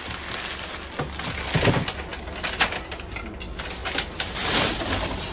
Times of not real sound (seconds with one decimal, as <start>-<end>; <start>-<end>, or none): none